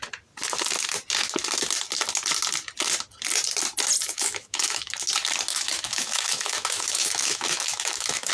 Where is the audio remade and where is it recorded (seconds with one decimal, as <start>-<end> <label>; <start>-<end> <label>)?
0.0-4.0 recorded; 4.0-4.9 remade; 4.9-5.5 recorded; 5.5-8.3 remade